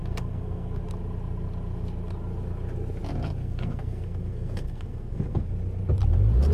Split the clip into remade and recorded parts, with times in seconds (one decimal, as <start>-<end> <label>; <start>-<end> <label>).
0.0-0.8 remade; 0.8-3.4 recorded; 3.4-5.5 remade; 5.5-6.5 recorded